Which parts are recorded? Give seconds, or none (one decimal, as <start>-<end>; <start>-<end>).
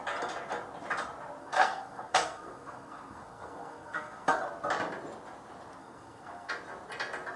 0.0-1.4; 4.4-5.8; 6.5-7.4